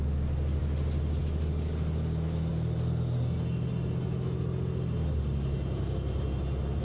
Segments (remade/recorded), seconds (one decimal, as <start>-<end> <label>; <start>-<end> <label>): 0.0-6.8 recorded